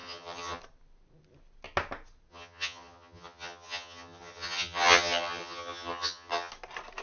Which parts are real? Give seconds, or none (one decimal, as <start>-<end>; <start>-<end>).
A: 0.6-2.3; 6.5-7.0